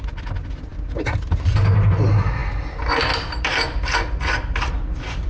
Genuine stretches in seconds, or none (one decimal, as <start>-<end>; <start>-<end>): 0.0-5.3